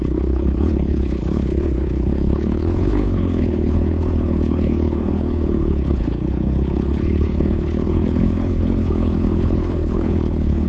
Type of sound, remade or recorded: remade